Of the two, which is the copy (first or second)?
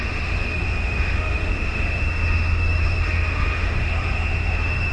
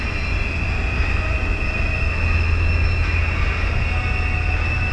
first